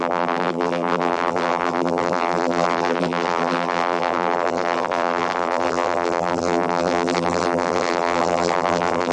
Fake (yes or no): yes